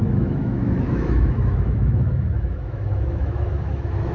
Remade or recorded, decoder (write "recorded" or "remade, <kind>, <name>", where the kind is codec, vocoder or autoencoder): remade, autoencoder, DAC-VAE